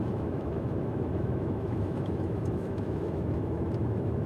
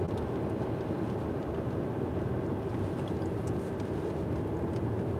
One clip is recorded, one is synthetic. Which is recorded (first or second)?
second